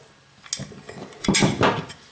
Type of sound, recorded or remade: recorded